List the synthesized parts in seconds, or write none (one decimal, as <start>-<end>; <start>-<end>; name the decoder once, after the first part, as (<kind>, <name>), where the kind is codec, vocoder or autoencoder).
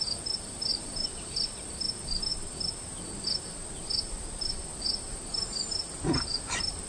0.7-1.3 (vocoder, BigVGAN v2)